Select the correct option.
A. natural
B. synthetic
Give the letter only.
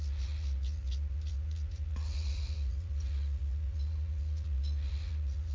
B